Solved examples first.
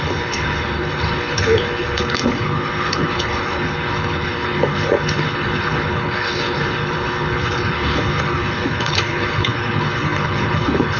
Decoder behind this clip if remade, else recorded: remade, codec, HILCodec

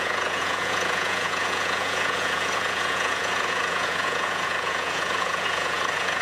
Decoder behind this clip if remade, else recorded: remade, vocoder, Vocos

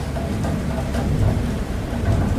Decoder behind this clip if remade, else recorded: recorded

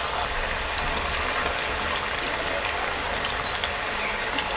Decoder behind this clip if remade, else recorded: recorded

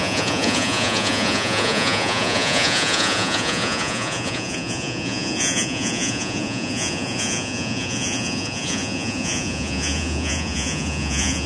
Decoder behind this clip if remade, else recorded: remade, vocoder, Vocos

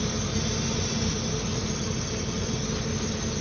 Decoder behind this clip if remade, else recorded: recorded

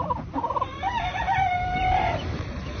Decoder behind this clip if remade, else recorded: remade, vocoder, BigVGAN v2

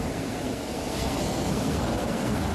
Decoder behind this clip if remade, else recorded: remade, codec, SNAC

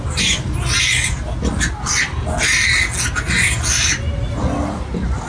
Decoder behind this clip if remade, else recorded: recorded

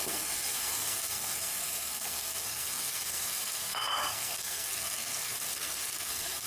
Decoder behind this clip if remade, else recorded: remade, codec, SNAC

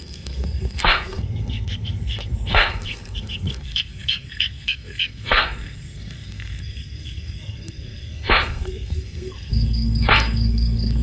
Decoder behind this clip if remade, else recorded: remade, codec, SNAC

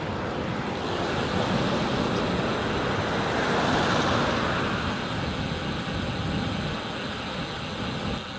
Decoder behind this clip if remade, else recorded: recorded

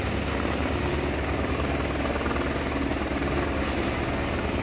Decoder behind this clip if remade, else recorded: recorded